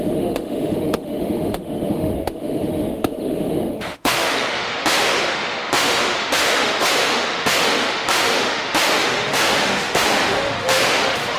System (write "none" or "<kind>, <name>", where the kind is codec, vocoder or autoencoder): autoencoder, DAC-VAE